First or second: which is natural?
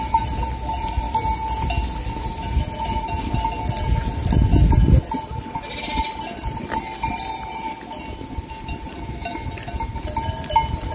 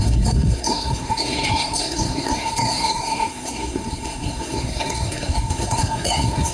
first